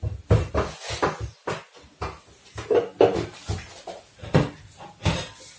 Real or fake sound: real